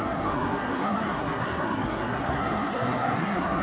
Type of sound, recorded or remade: remade